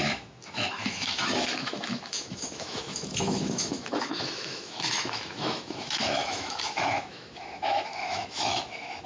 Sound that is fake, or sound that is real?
fake